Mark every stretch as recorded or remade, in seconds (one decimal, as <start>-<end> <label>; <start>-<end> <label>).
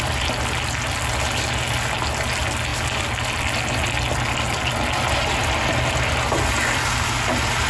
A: 0.0-7.7 recorded